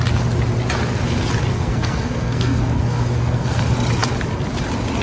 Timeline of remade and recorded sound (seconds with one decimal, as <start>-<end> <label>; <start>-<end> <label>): 0.0-1.5 recorded; 1.5-3.6 remade; 3.6-5.0 recorded

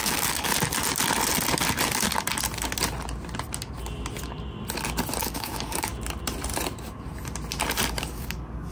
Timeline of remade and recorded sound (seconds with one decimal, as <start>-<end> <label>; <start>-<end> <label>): 0.0-0.5 remade; 0.5-5.2 recorded; 5.2-5.9 remade; 5.9-8.0 recorded; 8.0-8.7 remade

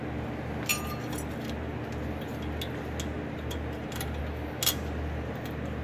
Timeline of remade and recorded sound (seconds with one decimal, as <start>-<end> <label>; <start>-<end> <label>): 0.0-5.8 recorded

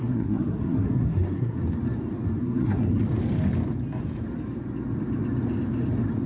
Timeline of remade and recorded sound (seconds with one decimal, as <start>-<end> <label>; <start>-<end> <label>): 0.0-1.6 remade; 1.6-2.4 recorded; 2.4-3.0 remade; 3.0-6.3 recorded

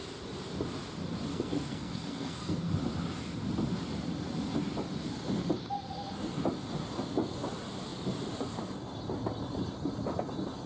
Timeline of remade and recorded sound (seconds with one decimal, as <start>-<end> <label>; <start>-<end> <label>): 0.0-1.3 recorded; 1.3-2.7 remade; 2.7-10.7 recorded